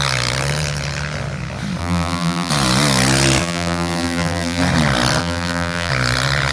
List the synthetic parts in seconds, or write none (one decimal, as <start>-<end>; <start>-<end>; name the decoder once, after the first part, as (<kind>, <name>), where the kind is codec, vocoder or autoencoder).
1.8-2.5 (vocoder, BigVGAN v2); 3.4-4.6; 5.2-5.9